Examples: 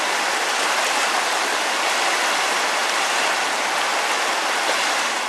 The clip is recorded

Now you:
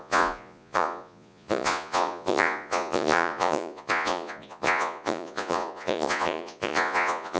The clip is remade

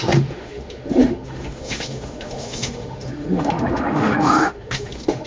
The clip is remade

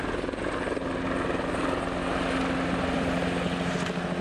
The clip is recorded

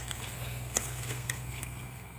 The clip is remade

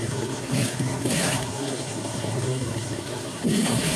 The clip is remade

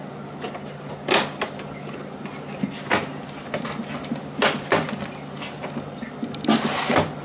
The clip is recorded